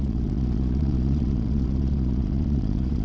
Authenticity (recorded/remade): remade